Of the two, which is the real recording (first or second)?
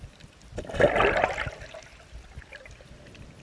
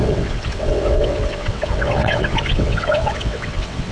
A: first